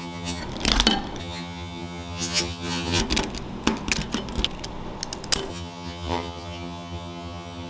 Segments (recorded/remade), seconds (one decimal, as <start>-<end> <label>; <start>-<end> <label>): 0.0-0.4 remade; 0.4-1.2 recorded; 1.2-3.0 remade; 3.0-5.5 recorded; 5.5-7.7 remade